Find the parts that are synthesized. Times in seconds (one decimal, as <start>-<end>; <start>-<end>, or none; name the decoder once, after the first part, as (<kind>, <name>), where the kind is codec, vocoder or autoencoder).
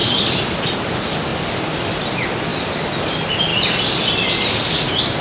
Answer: 0.0-0.7 (vocoder, BigVGAN v2); 1.3-2.1; 2.5-3.1; 3.5-4.3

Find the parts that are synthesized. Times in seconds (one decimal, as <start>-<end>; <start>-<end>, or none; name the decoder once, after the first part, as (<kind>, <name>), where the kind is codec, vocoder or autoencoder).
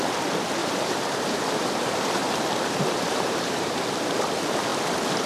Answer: 0.6-3.8 (vocoder, BigVGAN v2)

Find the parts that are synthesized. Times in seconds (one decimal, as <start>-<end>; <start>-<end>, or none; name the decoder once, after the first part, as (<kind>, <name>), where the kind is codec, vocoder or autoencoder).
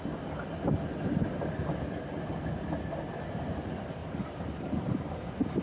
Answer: 4.0-5.6 (vocoder, BigVGAN v2)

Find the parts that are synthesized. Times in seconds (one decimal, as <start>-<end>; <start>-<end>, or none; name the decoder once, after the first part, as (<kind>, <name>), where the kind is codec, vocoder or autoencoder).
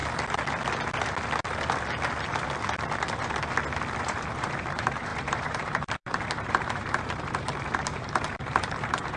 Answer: 4.0-9.2 (vocoder, BigVGAN v2)